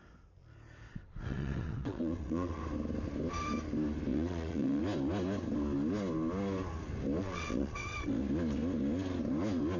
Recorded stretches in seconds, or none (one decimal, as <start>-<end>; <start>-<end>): 0.0-0.9; 2.6-4.1; 4.8-7.2; 8.0-9.8